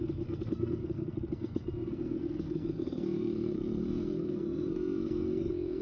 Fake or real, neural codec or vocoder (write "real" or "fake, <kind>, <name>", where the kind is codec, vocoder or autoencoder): fake, codec, SNAC